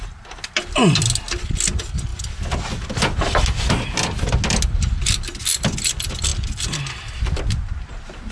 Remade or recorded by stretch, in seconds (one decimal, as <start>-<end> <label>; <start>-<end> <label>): 0.0-8.3 recorded